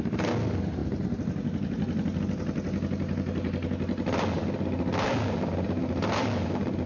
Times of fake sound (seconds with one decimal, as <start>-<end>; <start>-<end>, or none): none